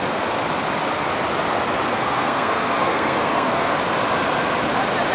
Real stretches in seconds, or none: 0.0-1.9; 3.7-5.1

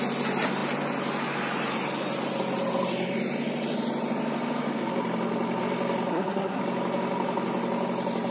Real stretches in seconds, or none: 0.0-6.1; 6.6-8.3

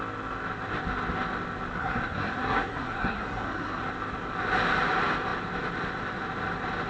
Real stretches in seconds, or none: 0.0-1.8; 3.8-6.9

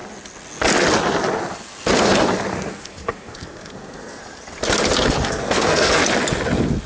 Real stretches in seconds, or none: 0.0-2.7; 4.2-5.3; 6.0-6.9

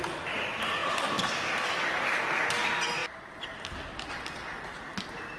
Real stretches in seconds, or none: 0.0-5.4

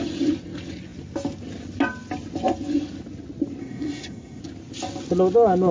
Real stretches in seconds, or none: 0.0-3.6; 4.4-5.7